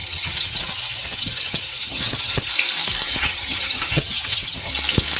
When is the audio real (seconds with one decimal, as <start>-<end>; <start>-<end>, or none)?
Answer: 2.5-3.1; 4.7-5.2

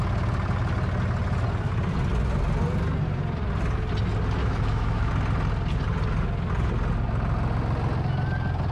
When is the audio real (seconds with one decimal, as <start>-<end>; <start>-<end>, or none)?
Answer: 0.0-4.4; 5.1-8.7

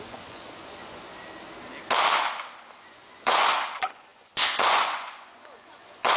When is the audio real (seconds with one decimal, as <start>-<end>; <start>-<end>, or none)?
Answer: 1.1-2.8